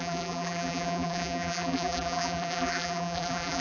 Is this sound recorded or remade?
remade